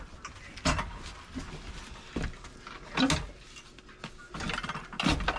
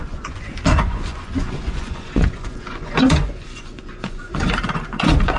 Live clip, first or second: first